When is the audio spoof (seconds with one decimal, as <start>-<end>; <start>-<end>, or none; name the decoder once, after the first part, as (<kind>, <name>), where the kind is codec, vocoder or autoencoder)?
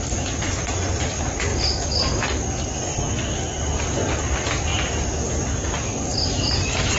none